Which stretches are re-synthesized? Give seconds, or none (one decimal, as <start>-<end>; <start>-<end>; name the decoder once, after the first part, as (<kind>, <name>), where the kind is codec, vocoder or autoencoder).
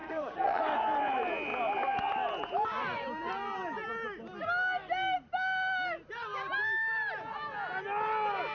0.0-0.6 (vocoder, Vocos)